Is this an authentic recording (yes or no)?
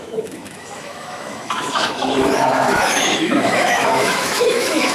no